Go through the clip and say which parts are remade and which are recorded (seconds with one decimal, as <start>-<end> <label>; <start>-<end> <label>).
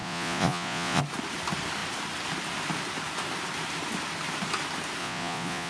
0.0-1.0 remade; 1.0-5.0 recorded; 5.0-5.7 remade